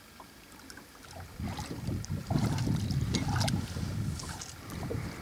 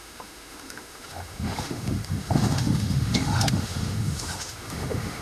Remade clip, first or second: second